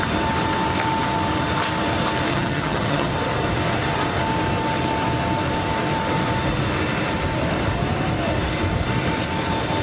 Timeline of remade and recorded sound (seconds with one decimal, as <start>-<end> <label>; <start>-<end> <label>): 0.0-2.3 recorded; 2.3-3.1 remade; 3.1-9.8 recorded